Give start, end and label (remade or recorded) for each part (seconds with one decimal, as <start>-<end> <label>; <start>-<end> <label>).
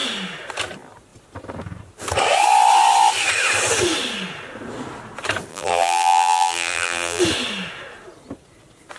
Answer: 0.0-5.5 recorded; 5.5-7.2 remade; 7.2-9.0 recorded